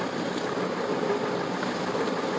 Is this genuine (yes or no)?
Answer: yes